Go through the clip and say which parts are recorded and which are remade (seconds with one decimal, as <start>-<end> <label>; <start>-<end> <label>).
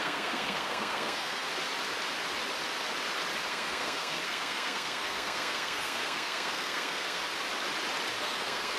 0.0-1.5 remade; 1.5-3.5 recorded; 3.5-7.2 remade; 7.2-8.2 recorded; 8.2-8.8 remade